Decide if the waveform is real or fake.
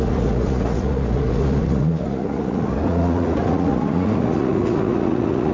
fake